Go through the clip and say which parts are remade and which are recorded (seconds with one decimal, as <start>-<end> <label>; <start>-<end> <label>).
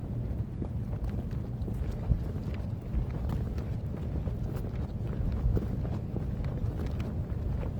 0.0-1.0 remade; 1.0-7.8 recorded